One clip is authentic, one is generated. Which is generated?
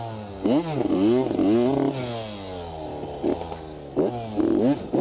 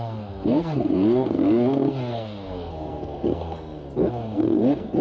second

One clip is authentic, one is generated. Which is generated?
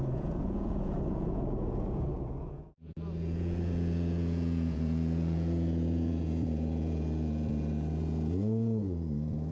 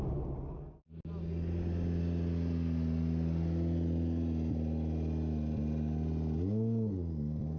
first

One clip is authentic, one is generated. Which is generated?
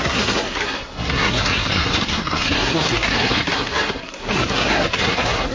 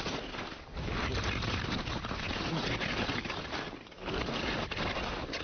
first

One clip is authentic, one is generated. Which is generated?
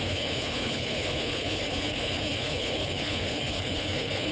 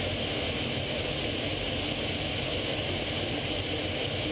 first